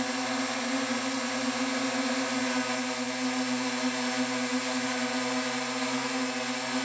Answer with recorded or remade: recorded